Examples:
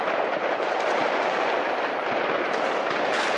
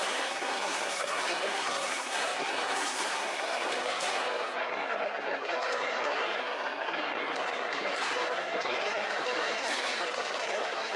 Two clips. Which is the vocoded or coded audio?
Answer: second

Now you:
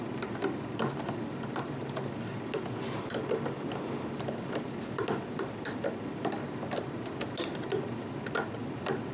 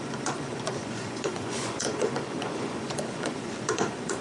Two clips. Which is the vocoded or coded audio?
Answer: second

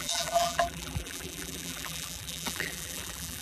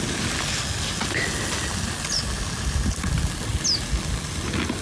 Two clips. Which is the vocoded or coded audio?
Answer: first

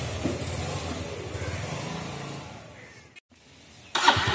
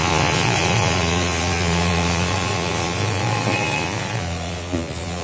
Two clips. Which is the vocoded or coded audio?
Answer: second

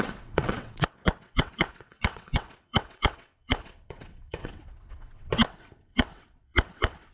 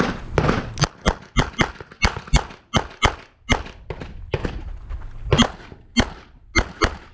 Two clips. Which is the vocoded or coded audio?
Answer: first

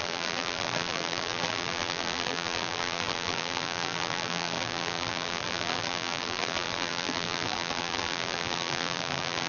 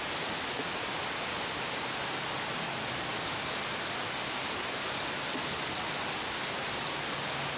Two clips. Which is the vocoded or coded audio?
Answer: first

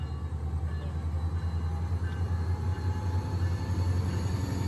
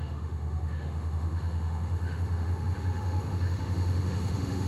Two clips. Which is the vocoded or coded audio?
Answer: second